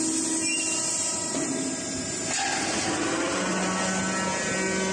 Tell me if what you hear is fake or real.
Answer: real